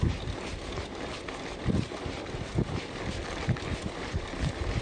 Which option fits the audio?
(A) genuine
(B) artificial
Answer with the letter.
A